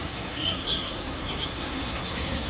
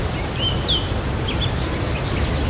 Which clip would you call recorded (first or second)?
second